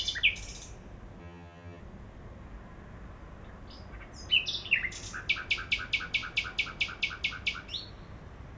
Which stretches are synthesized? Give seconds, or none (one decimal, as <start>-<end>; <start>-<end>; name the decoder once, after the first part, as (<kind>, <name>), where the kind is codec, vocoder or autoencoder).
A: 1.2-1.8 (vocoder, HiFi-GAN)